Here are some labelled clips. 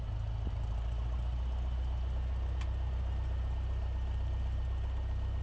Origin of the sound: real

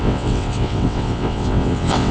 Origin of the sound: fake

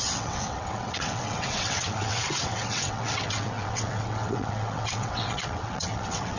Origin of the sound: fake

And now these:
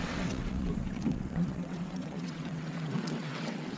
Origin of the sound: fake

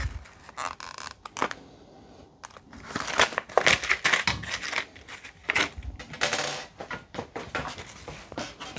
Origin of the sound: real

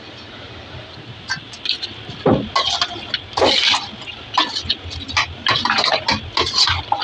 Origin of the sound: real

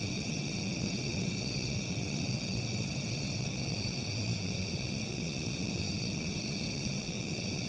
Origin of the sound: fake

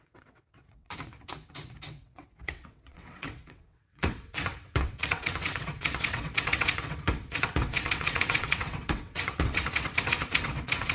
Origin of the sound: fake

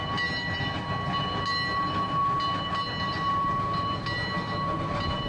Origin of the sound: real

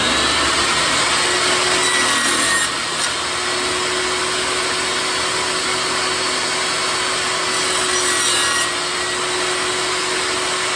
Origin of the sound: real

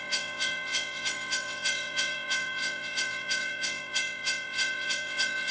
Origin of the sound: fake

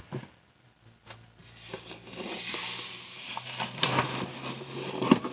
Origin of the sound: real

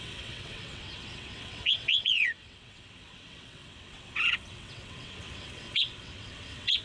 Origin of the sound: fake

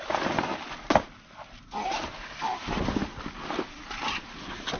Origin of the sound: real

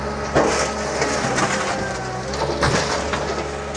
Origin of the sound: real